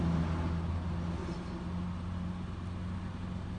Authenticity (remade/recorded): recorded